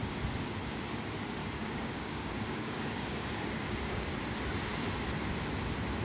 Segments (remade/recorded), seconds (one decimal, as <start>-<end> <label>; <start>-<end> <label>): 0.0-1.4 recorded; 1.4-4.1 remade; 4.1-6.0 recorded